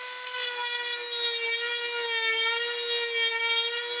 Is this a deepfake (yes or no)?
no